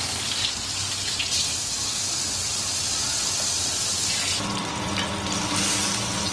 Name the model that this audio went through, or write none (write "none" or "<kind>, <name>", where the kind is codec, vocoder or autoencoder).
none